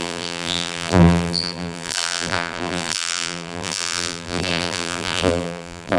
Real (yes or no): no